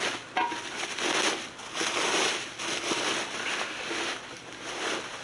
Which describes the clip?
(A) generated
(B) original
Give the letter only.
B